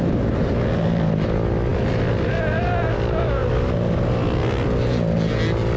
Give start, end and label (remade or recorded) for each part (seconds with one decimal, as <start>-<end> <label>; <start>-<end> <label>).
0.0-5.8 recorded